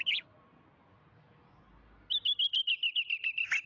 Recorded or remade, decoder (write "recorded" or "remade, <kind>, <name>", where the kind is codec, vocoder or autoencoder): recorded